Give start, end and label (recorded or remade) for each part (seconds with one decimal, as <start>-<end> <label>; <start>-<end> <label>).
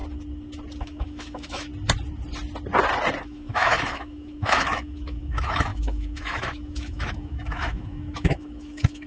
0.0-0.8 recorded; 0.8-1.7 remade; 1.7-3.2 recorded; 3.2-9.1 remade